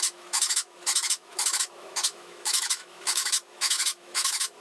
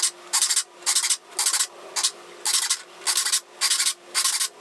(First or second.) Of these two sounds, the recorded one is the second